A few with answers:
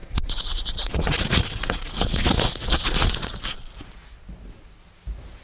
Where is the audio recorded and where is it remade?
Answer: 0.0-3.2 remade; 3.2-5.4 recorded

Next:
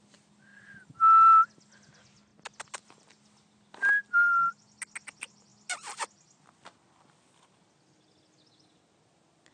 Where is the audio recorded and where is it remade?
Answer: 0.0-9.5 recorded